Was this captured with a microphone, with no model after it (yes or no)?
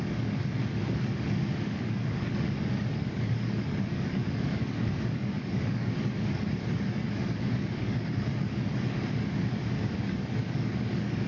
no